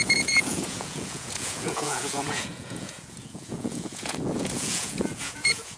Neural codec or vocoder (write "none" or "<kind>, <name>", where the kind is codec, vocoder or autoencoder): vocoder, Vocos